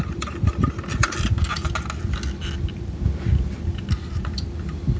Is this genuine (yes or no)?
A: yes